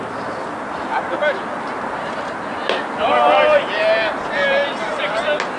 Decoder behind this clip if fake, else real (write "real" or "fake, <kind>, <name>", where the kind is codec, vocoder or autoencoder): real